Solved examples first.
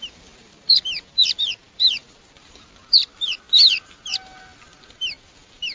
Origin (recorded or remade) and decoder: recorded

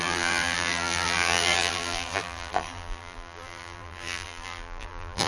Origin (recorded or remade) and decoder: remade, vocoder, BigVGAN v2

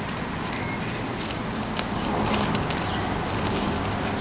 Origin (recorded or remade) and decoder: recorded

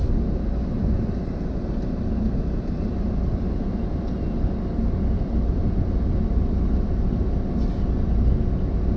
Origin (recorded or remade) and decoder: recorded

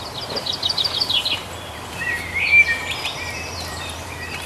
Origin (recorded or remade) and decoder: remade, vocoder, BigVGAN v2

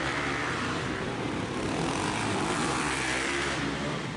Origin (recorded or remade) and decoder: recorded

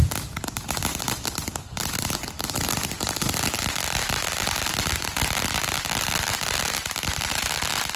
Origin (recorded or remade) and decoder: recorded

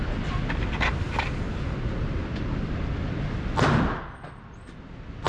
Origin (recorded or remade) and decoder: recorded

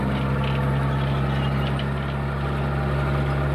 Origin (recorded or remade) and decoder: recorded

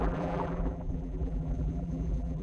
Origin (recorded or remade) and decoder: remade, vocoder, BigVGAN v2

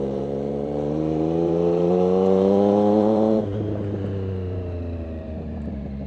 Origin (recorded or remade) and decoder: remade, vocoder, BigVGAN v2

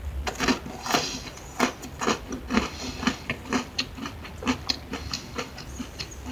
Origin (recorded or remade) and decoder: recorded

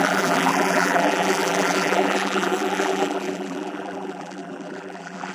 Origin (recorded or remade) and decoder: remade, vocoder, BigVGAN v2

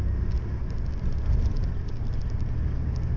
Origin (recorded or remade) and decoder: recorded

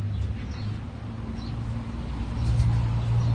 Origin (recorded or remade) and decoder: recorded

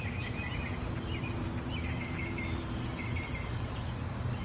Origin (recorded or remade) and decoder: remade, vocoder, BigVGAN v2